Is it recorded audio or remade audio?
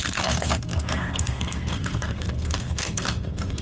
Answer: remade